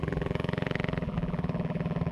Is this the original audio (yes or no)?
no